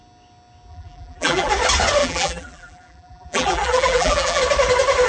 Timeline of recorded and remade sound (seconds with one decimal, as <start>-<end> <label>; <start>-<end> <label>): 0.0-0.7 recorded; 0.7-1.5 remade; 1.5-2.0 recorded; 2.0-4.4 remade; 4.4-5.1 recorded